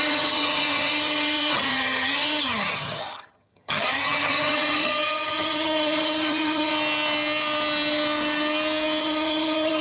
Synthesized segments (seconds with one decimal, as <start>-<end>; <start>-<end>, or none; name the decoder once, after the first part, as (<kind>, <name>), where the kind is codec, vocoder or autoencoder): 0.0-6.7 (vocoder, HiFi-GAN); 9.0-9.8